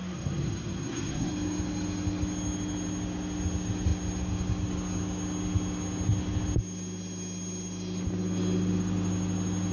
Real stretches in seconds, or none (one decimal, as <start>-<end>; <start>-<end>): 1.3-9.7